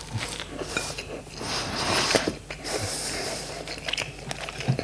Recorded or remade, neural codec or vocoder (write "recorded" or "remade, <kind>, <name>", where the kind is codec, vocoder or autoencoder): recorded